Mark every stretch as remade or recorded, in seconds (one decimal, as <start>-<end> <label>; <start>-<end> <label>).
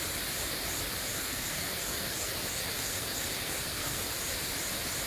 0.0-1.2 recorded; 1.2-4.2 remade; 4.2-5.1 recorded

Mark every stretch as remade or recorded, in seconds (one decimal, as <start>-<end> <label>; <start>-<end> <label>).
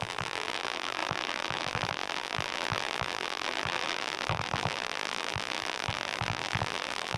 0.0-7.2 remade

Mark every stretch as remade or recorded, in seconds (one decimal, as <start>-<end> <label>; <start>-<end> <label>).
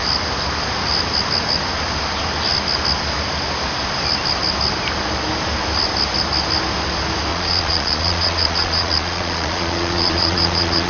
0.0-7.3 recorded; 7.3-10.9 remade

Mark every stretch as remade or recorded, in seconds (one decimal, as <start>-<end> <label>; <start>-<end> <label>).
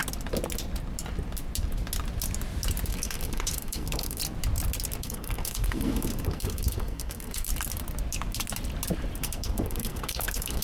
0.0-2.9 recorded; 2.9-4.2 remade; 4.2-5.0 recorded; 5.0-7.5 remade; 7.5-9.2 recorded; 9.2-10.6 remade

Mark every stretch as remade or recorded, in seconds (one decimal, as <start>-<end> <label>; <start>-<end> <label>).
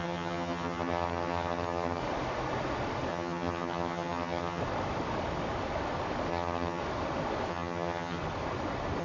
0.0-2.0 remade; 2.0-3.1 recorded; 3.1-4.6 remade; 4.6-6.3 recorded; 6.3-6.8 remade; 6.8-7.5 recorded; 7.5-8.2 remade; 8.2-9.0 recorded